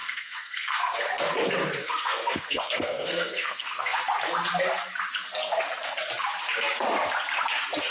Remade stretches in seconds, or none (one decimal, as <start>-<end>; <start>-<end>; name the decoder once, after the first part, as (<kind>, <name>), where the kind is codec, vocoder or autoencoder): 0.0-1.0 (codec, SNAC); 1.8-4.0